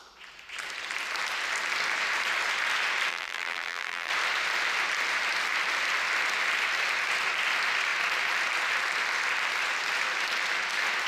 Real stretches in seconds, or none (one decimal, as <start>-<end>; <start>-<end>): 0.0-3.1; 4.1-11.1